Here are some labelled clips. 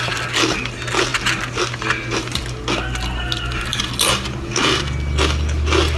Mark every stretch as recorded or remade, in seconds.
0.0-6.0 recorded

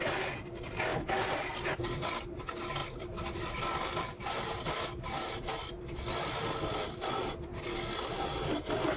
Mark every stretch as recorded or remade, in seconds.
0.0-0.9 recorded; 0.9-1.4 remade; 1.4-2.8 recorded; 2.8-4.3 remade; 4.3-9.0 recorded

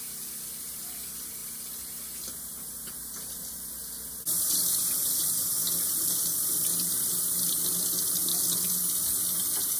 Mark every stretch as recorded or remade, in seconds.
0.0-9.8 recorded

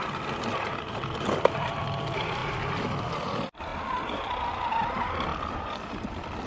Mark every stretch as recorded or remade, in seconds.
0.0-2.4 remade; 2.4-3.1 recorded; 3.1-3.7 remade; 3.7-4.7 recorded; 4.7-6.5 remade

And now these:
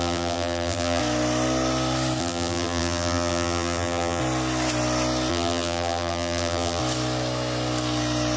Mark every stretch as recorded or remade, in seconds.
0.0-1.0 remade; 1.0-2.2 recorded; 2.2-4.2 remade; 4.2-5.3 recorded; 5.3-6.8 remade; 6.8-8.4 recorded

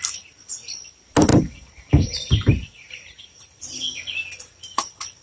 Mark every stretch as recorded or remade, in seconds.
0.0-1.3 recorded; 1.3-3.6 remade; 3.6-5.2 recorded